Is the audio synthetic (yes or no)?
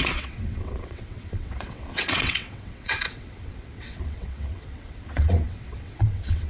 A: yes